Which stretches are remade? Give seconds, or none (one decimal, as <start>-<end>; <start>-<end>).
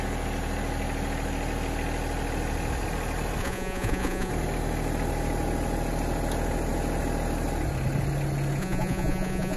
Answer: 3.4-4.3; 8.6-9.6